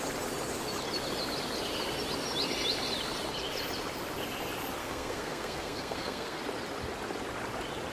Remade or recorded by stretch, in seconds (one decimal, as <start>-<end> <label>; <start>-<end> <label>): 0.0-4.8 recorded; 4.8-6.4 remade; 6.4-7.9 recorded